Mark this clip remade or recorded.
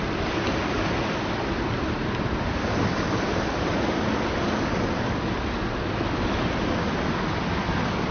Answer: recorded